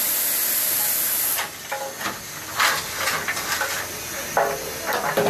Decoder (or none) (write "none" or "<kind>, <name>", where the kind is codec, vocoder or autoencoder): none